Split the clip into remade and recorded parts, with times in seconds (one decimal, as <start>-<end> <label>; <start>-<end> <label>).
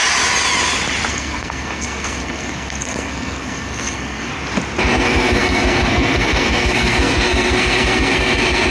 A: 0.0-1.1 recorded; 1.1-4.3 remade; 4.3-4.9 recorded; 4.9-8.7 remade